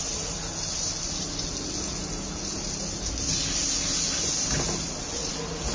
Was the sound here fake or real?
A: real